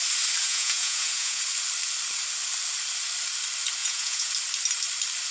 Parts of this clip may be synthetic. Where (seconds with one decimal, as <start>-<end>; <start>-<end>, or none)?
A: 0.4-1.4; 3.8-4.3